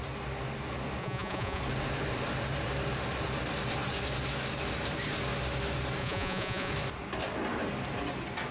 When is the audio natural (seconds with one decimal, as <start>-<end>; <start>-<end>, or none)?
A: 0.0-1.0; 1.6-6.0; 6.7-8.5